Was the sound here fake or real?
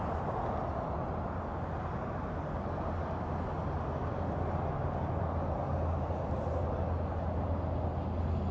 real